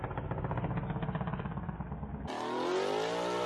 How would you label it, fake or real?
real